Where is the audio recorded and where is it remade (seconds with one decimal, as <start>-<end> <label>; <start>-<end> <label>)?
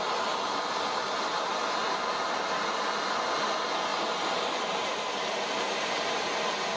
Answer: 0.0-3.9 recorded; 3.9-6.2 remade; 6.2-6.8 recorded